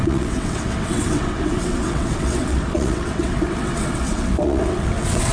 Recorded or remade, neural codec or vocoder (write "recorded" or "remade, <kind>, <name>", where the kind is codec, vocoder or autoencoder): remade, vocoder, WaveNeXt